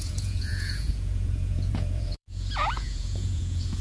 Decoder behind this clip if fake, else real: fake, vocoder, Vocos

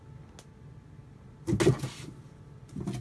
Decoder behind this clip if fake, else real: real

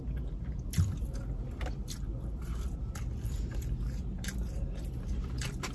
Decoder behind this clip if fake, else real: real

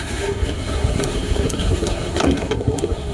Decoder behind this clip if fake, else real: fake, codec, SNAC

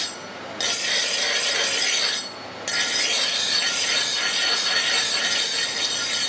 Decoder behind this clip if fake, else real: real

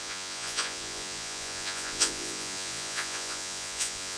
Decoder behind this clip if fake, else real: fake, vocoder, Vocos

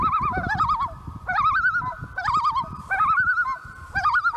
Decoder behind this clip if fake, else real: fake, vocoder, BigVGAN v2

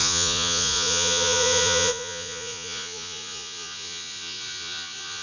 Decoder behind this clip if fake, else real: fake, vocoder, Vocos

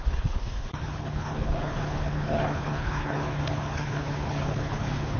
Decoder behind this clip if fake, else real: fake, codec, HILCodec